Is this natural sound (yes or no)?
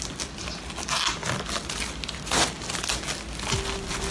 yes